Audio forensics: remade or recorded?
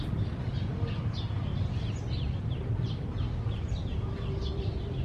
recorded